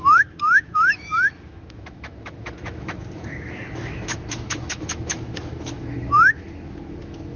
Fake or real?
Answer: fake